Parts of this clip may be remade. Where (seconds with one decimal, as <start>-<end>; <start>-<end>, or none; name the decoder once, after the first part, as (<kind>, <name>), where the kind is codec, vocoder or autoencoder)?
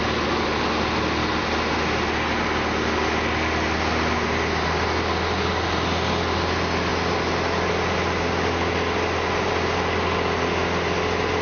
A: none